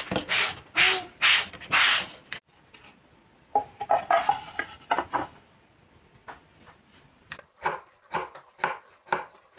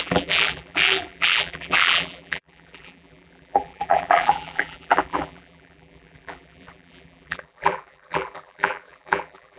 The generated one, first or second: second